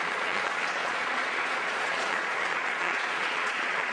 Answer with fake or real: fake